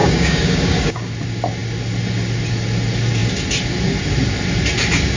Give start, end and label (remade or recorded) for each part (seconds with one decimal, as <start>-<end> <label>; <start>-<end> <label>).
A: 0.0-1.1 remade; 1.1-5.2 recorded